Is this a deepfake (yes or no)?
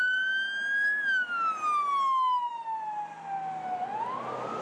no